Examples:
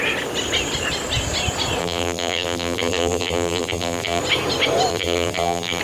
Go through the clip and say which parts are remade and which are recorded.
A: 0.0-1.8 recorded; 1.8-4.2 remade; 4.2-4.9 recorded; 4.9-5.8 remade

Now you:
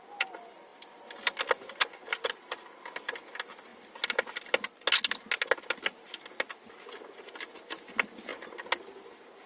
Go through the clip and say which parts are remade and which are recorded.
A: 0.0-0.7 recorded; 0.7-2.7 remade; 2.7-9.5 recorded